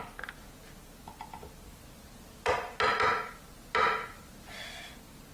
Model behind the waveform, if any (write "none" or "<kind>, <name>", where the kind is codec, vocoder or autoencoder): none